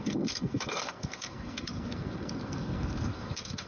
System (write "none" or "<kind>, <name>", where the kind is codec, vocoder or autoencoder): codec, SNAC